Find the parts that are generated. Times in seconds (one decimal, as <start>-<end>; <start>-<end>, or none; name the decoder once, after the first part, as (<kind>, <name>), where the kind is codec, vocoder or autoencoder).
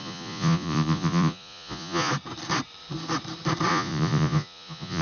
0.0-2.1 (vocoder, Vocos); 3.7-5.0